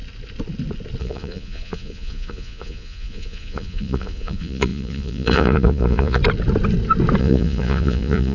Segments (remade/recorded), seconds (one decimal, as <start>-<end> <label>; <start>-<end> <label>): 0.0-1.0 recorded; 1.0-6.2 remade; 6.2-7.2 recorded; 7.2-8.3 remade